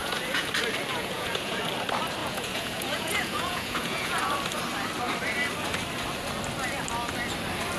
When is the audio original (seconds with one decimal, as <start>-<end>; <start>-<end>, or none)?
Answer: 0.5-0.9; 1.6-2.2; 4.2-7.8